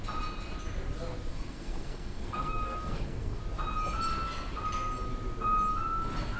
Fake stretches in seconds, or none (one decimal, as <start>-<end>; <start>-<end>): 1.3-3.4